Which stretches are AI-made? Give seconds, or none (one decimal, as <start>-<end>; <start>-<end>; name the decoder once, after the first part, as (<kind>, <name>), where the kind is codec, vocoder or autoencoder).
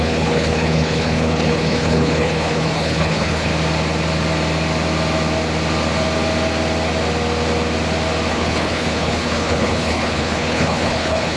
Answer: 0.0-3.5 (codec, HILCodec); 8.3-11.4